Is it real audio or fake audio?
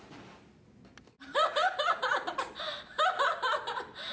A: real